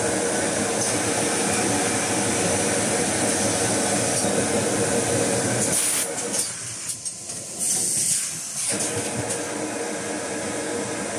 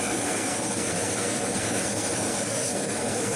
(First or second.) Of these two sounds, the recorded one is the first